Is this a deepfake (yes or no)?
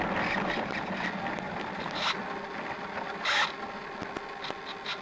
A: no